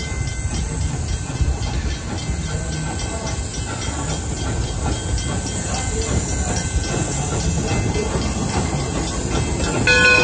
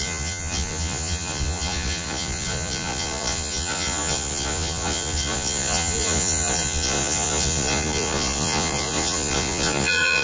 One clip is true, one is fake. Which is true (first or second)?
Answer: first